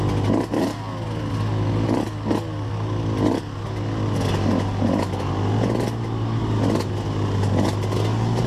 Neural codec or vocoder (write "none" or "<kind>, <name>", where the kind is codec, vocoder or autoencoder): none